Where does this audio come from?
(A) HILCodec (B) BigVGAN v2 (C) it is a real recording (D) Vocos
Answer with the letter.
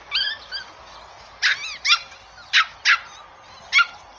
C